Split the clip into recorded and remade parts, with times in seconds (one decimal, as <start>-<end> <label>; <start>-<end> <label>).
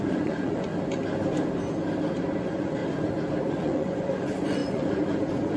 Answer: 0.0-0.7 remade; 0.7-2.4 recorded; 2.4-2.8 remade; 2.8-3.5 recorded; 3.5-5.6 remade